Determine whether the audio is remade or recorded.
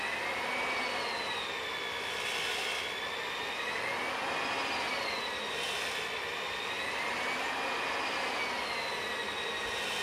recorded